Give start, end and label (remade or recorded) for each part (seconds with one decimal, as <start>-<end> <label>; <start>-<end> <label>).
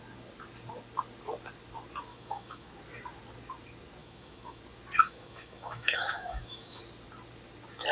0.0-2.1 recorded; 2.1-2.7 remade; 2.7-4.0 recorded; 4.0-4.6 remade; 4.6-5.0 recorded; 5.0-6.8 remade; 6.8-7.9 recorded